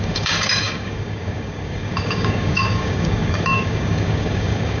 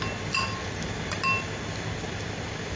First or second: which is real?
second